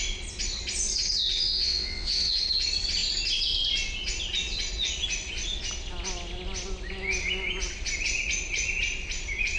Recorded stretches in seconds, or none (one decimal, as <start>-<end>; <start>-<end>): 0.0-1.3; 2.4-9.6